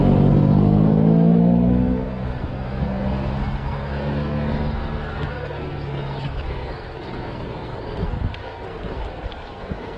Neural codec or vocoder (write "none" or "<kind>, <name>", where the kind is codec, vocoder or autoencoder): codec, SNAC